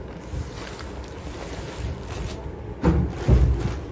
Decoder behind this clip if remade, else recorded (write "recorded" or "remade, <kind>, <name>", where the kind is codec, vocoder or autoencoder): recorded